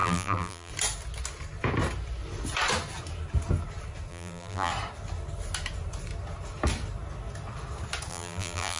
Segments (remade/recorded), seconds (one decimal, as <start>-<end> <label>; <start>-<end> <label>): 0.0-0.7 remade; 0.7-4.1 recorded; 4.1-4.7 remade; 4.7-8.1 recorded; 8.1-8.8 remade